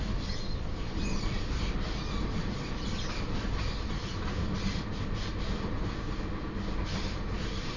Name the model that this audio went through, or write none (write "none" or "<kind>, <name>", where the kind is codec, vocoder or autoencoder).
none